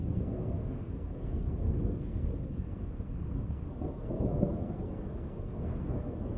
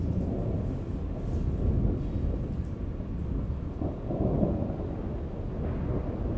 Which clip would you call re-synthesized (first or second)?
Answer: first